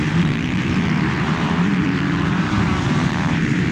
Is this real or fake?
fake